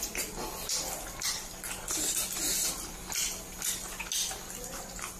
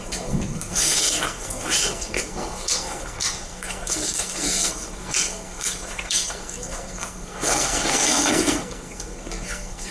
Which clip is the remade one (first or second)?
second